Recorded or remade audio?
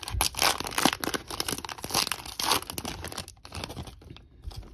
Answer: recorded